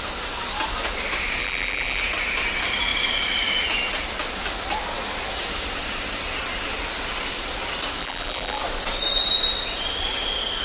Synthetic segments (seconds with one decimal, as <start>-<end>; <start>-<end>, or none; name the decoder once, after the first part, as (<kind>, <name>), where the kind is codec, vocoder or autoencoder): 1.4-2.0 (vocoder, BigVGAN v2); 8.0-8.6